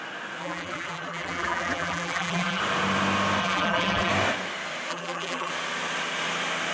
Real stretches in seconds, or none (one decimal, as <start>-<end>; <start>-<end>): 0.0-0.4; 2.6-3.4; 4.1-4.9; 5.5-6.7